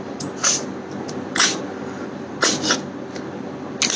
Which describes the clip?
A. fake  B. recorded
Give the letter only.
B